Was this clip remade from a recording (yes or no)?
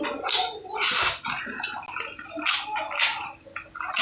no